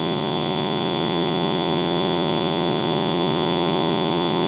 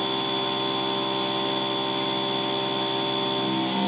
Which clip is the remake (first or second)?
first